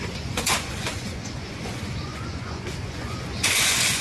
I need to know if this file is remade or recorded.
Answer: remade